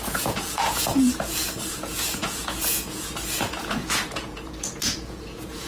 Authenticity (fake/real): fake